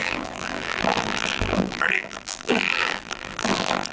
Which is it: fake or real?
fake